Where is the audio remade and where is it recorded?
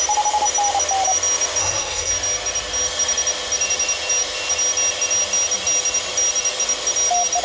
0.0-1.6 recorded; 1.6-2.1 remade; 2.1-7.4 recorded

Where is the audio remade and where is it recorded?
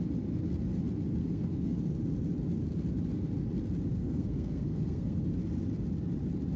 0.0-1.2 recorded; 1.2-1.8 remade; 1.8-4.0 recorded; 4.0-5.2 remade; 5.2-6.6 recorded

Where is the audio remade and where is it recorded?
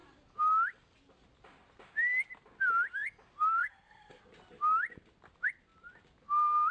0.0-3.6 recorded; 3.6-4.2 remade; 4.2-6.7 recorded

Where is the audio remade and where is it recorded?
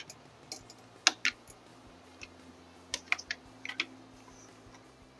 0.0-5.2 recorded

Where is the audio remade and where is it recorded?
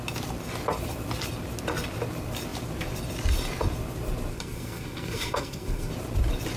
0.0-4.3 recorded; 4.3-5.9 remade; 5.9-6.6 recorded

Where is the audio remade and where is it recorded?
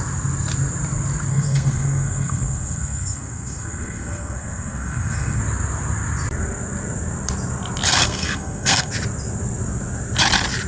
0.0-1.3 recorded; 1.3-5.4 remade; 5.4-8.0 recorded; 8.0-8.9 remade; 8.9-10.7 recorded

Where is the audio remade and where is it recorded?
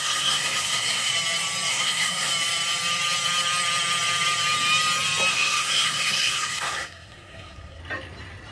0.0-1.1 remade; 1.1-1.7 recorded; 1.7-2.3 remade; 2.3-5.3 recorded; 5.3-7.8 remade; 7.8-8.5 recorded